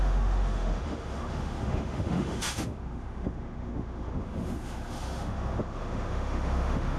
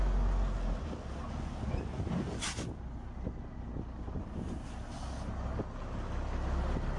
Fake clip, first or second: first